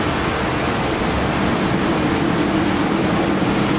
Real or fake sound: real